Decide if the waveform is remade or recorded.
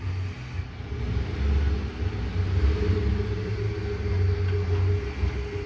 recorded